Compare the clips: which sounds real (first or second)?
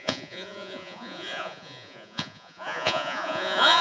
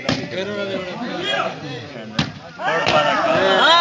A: second